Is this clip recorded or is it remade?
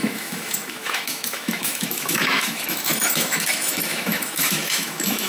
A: remade